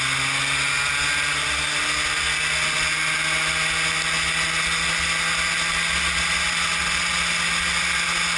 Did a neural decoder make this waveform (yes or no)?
no